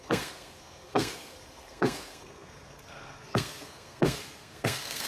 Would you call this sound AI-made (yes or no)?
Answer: yes